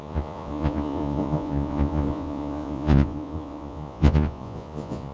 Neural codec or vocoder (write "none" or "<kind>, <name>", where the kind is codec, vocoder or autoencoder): vocoder, Vocos